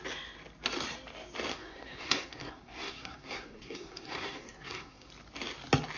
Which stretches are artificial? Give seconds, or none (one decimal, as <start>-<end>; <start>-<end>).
1.5-5.1